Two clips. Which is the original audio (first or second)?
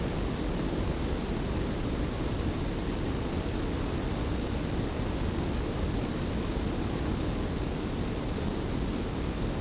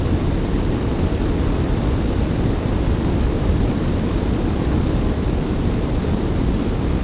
first